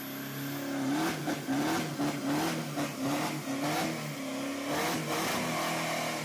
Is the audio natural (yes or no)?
yes